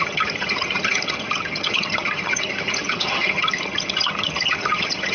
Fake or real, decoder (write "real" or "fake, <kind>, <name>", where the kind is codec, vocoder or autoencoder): fake, vocoder, HiFi-GAN